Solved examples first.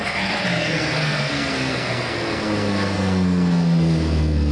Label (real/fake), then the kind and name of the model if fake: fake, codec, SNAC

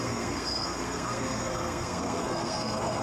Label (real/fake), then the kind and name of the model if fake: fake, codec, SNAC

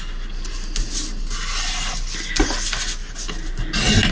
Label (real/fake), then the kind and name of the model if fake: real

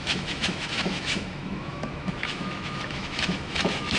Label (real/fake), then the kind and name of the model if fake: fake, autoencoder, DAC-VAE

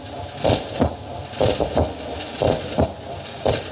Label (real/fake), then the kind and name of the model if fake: real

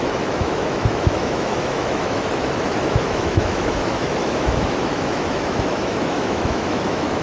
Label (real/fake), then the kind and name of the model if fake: fake, autoencoder, DAC-VAE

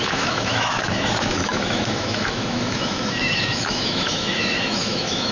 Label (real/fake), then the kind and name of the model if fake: fake, autoencoder, DAC-VAE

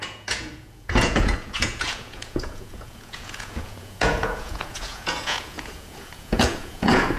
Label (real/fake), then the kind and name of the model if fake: fake, vocoder, Vocos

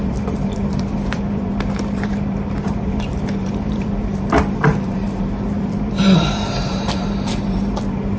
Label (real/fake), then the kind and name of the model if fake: fake, vocoder, BigVGAN v2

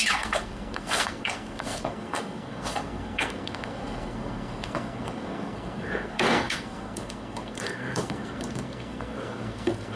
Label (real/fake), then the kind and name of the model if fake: fake, codec, SNAC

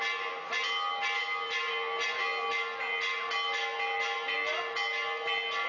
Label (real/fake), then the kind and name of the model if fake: real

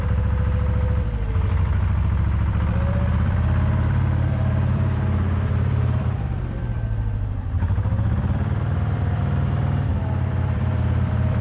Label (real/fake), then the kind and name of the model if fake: fake, vocoder, BigVGAN v2